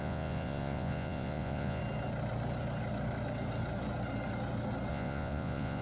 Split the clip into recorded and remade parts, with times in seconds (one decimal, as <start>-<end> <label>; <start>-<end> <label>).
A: 0.0-1.8 remade; 1.8-4.9 recorded; 4.9-5.8 remade